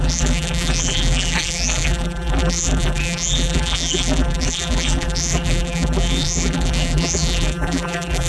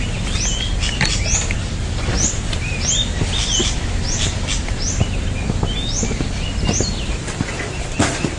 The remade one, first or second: first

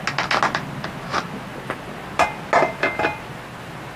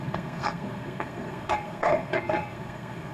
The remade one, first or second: second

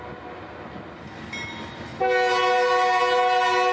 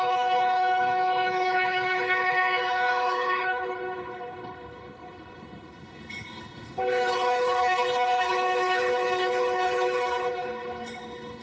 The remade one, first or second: second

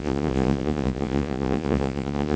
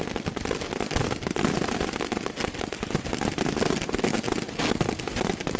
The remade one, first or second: first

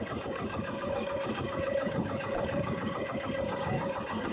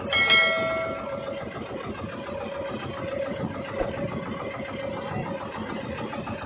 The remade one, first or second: first